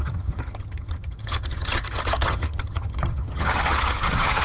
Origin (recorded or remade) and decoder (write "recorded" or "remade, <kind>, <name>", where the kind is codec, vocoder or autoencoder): remade, vocoder, HiFi-GAN